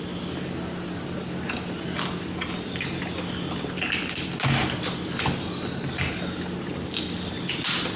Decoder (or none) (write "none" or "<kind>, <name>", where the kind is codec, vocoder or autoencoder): none